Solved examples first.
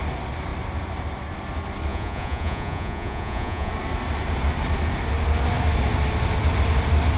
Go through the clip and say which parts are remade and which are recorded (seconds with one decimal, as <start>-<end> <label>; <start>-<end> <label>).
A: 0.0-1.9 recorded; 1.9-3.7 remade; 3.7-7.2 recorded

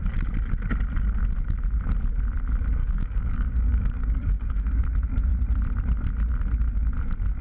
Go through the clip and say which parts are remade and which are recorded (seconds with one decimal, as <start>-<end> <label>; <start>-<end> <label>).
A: 0.0-2.8 recorded; 2.8-4.8 remade; 4.8-7.4 recorded

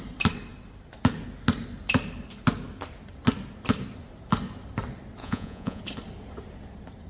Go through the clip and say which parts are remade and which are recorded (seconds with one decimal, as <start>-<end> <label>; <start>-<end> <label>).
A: 0.0-5.2 recorded; 5.2-5.8 remade; 5.8-7.1 recorded

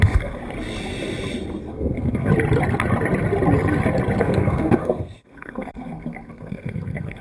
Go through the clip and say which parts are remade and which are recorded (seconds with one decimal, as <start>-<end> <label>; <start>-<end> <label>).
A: 0.0-0.4 remade; 0.4-1.6 recorded; 1.6-2.3 remade; 2.3-4.2 recorded; 4.2-7.2 remade

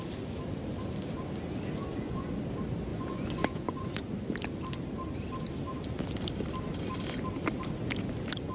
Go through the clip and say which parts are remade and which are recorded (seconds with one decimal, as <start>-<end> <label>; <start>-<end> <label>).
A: 0.0-1.8 recorded; 1.8-2.3 remade; 2.3-2.9 recorded; 2.9-4.0 remade; 4.0-8.5 recorded

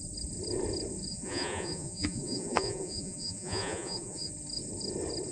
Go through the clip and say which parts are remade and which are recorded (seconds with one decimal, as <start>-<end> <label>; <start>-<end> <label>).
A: 0.0-1.1 recorded; 1.1-4.3 remade; 4.3-5.3 recorded

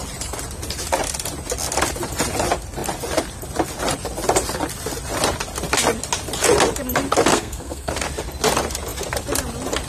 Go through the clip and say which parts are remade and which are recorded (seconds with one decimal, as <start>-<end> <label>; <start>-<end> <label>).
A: 0.0-7.3 recorded; 7.3-7.9 remade; 7.9-9.9 recorded